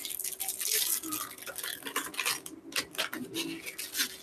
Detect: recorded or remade recorded